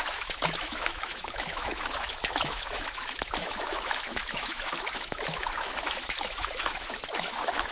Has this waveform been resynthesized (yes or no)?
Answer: yes